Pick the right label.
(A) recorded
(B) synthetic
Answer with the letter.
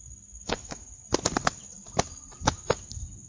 A